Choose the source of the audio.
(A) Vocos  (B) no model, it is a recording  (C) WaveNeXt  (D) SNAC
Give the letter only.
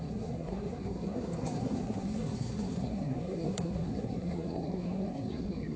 D